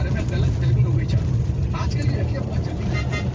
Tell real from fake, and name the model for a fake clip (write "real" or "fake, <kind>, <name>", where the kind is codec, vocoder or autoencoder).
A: real